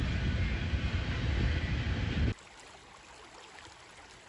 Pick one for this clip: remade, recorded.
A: recorded